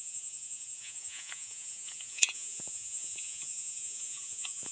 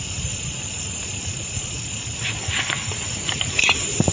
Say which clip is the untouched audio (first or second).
second